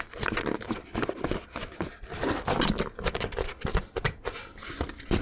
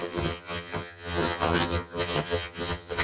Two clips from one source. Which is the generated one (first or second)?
second